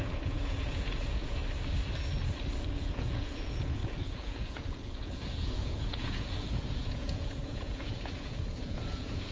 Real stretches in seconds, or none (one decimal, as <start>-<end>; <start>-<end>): 1.4-2.8